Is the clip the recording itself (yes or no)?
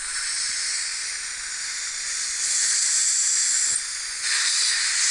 yes